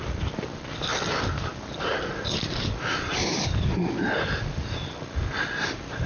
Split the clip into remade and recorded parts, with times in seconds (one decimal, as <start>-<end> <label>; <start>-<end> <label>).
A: 0.0-6.1 recorded